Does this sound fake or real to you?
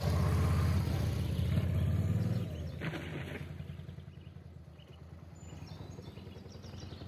real